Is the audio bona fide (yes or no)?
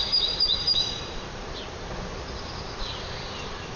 no